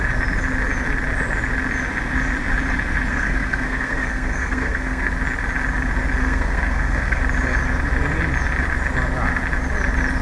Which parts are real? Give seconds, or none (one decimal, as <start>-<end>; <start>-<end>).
0.0-3.1; 5.1-6.2; 7.2-10.2